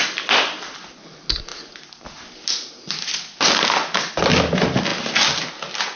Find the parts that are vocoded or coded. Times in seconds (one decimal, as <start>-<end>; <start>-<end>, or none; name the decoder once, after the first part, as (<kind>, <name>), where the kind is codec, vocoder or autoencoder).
none